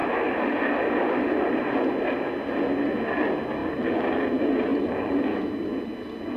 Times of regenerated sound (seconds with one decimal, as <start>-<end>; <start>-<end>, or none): 0.0-1.6; 3.6-4.2; 4.7-5.2